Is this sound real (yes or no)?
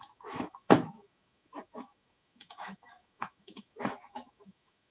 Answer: no